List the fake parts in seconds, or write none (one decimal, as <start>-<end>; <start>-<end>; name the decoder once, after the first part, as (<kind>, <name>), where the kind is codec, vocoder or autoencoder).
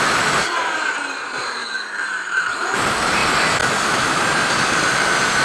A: 0.0-1.6 (vocoder, BigVGAN v2); 2.3-3.2; 4.9-5.4